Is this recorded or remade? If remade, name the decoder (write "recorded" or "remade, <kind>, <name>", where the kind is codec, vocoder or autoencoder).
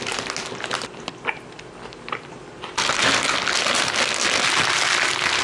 recorded